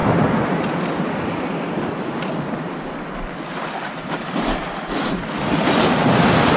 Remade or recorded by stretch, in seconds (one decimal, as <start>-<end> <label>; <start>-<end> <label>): 0.0-6.6 recorded